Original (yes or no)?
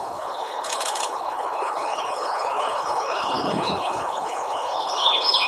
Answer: no